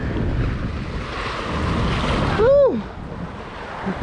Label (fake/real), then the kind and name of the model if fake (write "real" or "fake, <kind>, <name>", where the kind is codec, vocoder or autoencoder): real